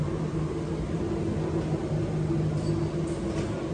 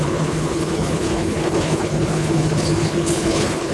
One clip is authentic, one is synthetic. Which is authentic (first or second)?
first